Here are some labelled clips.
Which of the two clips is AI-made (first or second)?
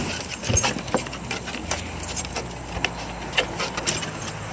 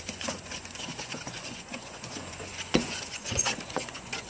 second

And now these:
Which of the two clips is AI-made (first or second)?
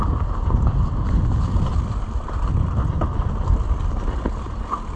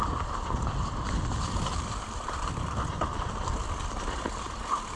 second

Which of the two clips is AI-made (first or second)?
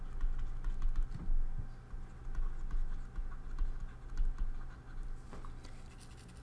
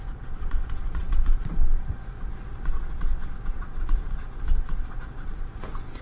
second